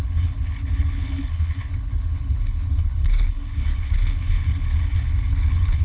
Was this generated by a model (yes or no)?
yes